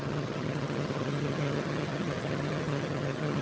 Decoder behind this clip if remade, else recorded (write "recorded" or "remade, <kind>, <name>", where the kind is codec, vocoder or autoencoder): remade, vocoder, HiFi-GAN